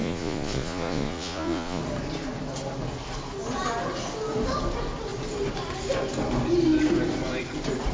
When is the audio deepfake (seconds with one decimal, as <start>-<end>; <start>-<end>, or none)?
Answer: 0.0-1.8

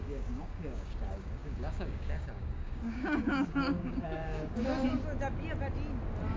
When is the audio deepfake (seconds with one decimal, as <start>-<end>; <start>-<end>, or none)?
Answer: 0.0-4.7

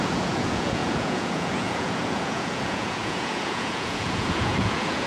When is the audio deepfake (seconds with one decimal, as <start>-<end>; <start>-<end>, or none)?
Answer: 0.0-5.1

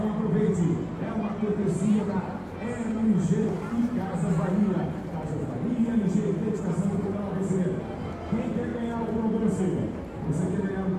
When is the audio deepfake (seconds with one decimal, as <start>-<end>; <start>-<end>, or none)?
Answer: 0.0-11.0

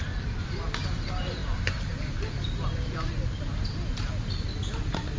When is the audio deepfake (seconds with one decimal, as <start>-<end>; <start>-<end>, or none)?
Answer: none

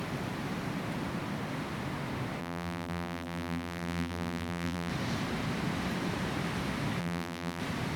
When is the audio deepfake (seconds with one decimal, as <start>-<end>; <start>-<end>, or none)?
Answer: 2.4-4.9; 7.0-7.6

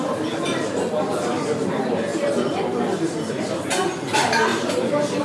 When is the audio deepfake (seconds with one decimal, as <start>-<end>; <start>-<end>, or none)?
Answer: none